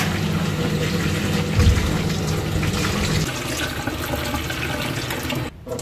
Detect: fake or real real